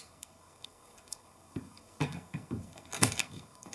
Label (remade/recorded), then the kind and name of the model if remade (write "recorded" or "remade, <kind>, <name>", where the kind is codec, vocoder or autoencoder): remade, codec, SNAC